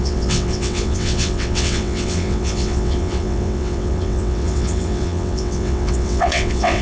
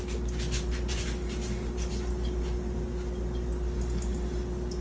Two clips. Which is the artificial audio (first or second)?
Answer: first